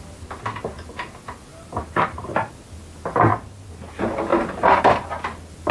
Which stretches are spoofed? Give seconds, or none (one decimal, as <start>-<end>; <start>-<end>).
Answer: 1.5-2.5; 4.3-4.9